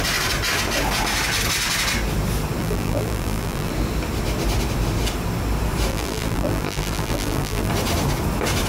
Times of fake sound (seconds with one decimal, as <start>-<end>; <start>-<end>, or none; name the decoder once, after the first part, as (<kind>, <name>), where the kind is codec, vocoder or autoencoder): 2.6-3.7 (vocoder, BigVGAN v2); 5.9-7.7